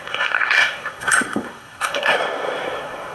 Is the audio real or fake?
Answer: fake